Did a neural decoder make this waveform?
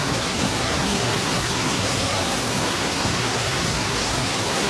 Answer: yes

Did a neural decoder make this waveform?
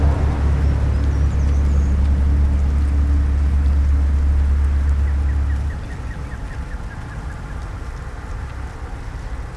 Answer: no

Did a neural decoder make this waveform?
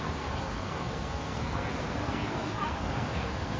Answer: yes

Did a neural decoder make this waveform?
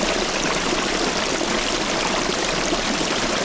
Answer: no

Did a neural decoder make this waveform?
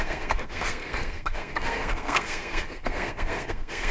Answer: yes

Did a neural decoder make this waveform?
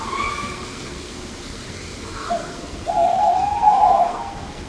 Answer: yes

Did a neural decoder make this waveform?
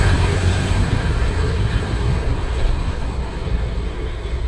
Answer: yes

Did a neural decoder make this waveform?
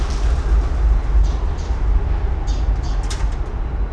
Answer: no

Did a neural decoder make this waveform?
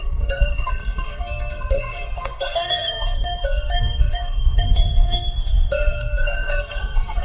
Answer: yes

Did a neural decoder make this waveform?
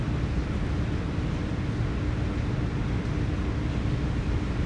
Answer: no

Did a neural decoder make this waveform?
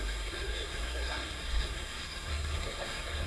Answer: yes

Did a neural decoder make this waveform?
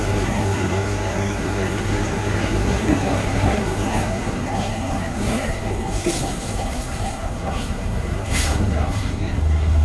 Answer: yes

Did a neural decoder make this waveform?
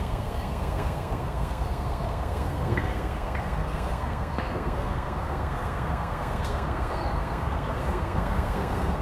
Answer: yes